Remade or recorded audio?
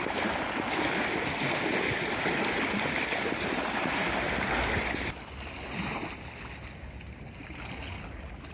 recorded